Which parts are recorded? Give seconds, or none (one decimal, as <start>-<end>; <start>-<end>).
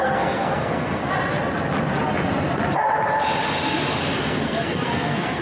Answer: 1.0-4.2